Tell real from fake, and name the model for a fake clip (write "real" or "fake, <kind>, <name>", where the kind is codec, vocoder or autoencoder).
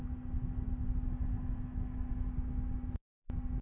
real